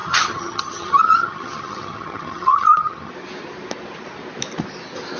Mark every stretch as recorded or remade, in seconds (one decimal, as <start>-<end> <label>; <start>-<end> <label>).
0.0-3.1 remade; 3.1-5.2 recorded